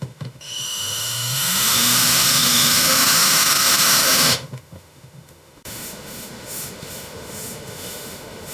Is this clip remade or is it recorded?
remade